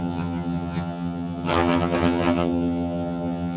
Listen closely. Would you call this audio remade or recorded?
remade